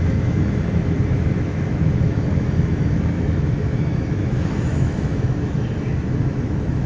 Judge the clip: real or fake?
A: fake